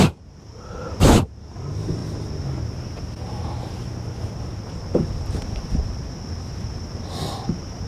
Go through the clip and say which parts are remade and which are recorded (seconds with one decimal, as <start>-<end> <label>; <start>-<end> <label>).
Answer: 0.0-7.9 recorded